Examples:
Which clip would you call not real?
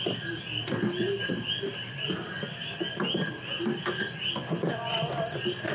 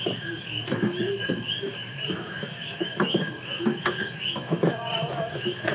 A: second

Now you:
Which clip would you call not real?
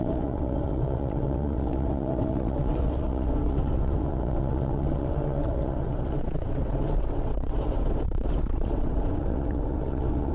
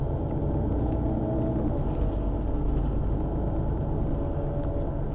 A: first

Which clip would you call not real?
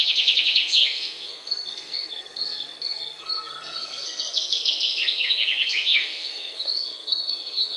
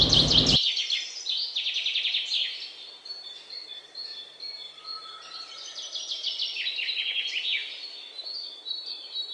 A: first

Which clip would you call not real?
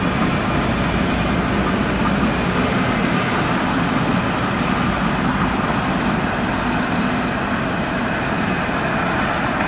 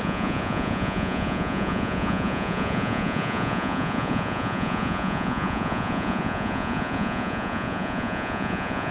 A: second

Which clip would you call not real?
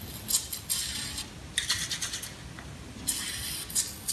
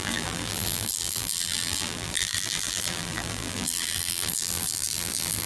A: second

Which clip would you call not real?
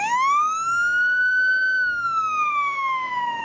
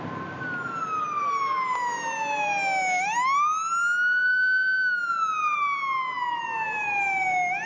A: first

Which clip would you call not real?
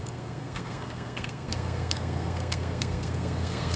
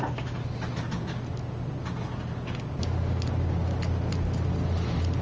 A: first